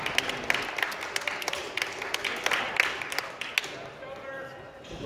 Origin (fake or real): real